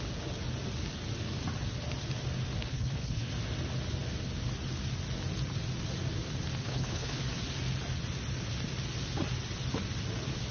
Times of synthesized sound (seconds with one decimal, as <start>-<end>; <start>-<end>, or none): 2.7-3.3; 6.6-7.2